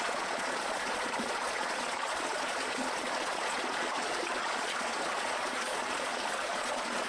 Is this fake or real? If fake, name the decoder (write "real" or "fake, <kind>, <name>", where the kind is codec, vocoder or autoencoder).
fake, vocoder, Vocos